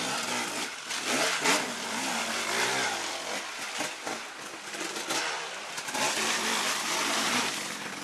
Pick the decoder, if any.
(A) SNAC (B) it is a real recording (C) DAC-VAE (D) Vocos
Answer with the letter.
B